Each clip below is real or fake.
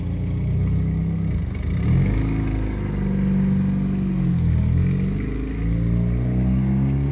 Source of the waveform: real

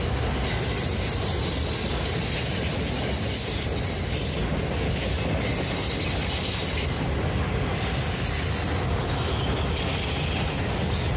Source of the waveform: real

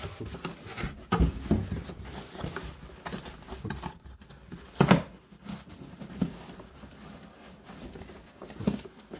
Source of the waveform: real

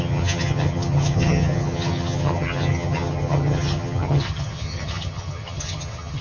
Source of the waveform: fake